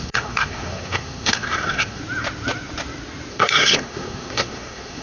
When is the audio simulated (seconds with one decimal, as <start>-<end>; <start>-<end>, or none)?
0.0-2.0; 3.3-5.0